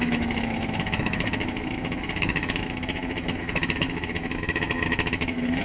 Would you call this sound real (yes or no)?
no